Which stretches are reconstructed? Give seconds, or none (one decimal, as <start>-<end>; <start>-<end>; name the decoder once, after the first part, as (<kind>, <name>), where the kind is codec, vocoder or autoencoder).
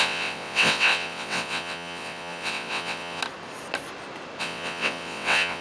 0.0-3.2 (vocoder, WaveNeXt); 4.4-5.6